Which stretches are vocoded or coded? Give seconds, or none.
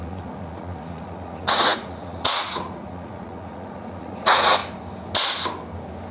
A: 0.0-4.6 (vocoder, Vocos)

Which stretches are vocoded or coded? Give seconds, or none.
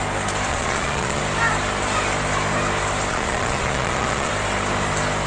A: 0.5-1.2 (vocoder, Vocos); 3.1-4.3